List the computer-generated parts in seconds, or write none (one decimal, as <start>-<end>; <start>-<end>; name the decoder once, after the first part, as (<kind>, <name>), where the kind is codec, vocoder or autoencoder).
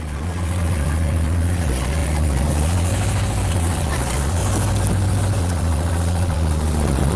0.0-2.9 (vocoder, Vocos); 3.5-4.4; 5.4-7.2